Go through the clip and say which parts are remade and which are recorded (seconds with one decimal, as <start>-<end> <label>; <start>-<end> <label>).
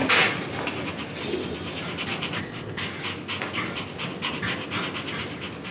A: 0.0-2.4 recorded; 2.4-2.8 remade; 2.8-5.7 recorded